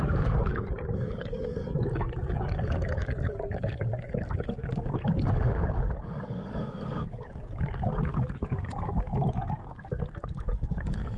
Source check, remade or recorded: remade